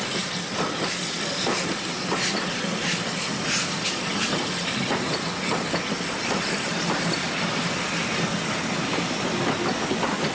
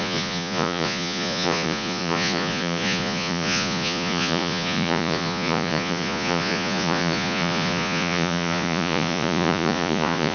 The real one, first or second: first